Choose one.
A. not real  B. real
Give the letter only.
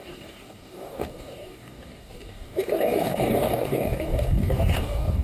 A